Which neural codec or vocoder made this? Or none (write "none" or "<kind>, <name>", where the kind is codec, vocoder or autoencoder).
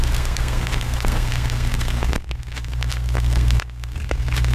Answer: codec, SNAC